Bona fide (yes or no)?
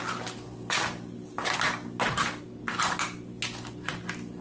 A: yes